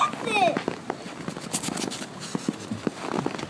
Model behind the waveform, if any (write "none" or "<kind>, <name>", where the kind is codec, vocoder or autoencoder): none